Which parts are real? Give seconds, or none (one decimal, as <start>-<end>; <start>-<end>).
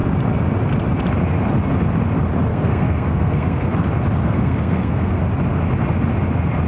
0.0-2.5; 3.7-4.2; 5.2-6.7